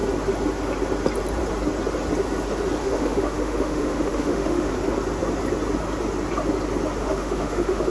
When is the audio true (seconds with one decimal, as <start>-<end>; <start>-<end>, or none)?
0.0-2.8; 4.7-7.0